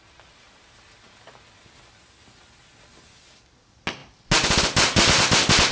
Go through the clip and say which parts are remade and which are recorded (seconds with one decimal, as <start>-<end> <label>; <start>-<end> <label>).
0.0-5.7 recorded